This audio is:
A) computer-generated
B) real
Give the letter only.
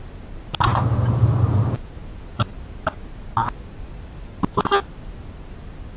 B